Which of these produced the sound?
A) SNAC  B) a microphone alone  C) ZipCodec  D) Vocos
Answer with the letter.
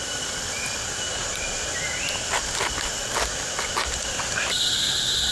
B